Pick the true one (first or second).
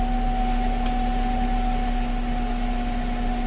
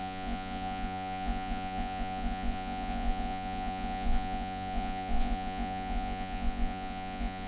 first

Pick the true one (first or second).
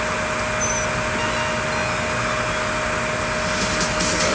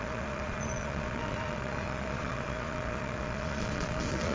first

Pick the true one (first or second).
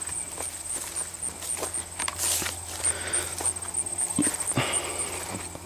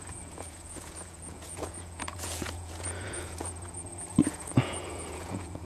first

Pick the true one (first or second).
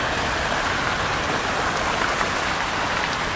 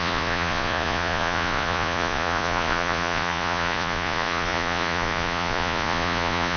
first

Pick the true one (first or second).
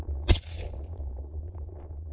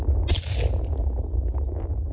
second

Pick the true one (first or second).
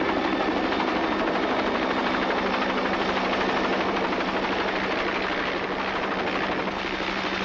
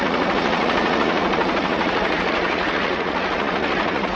first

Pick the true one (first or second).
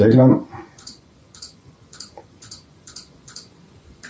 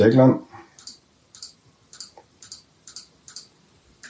second